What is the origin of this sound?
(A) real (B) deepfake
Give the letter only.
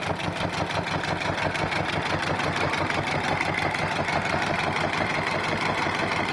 A